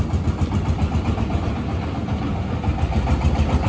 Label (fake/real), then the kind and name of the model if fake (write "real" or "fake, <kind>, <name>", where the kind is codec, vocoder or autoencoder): real